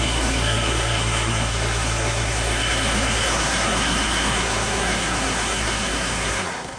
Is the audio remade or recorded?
remade